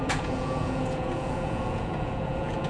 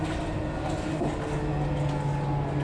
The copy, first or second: first